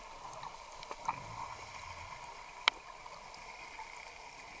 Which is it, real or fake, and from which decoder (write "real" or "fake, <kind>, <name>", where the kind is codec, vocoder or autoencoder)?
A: real